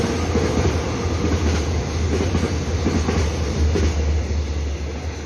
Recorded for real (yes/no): yes